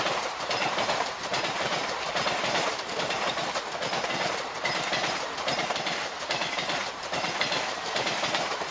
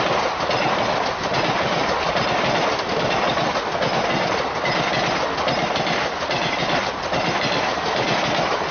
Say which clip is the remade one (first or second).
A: first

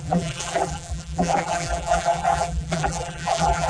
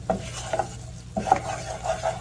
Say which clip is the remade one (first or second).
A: first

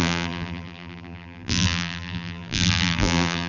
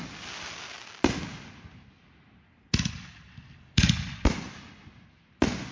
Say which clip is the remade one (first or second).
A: first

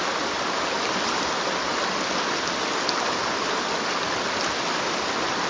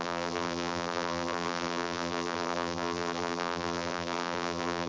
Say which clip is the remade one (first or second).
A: second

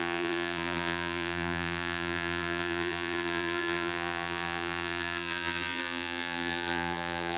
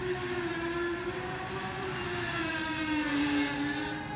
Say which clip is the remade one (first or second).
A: first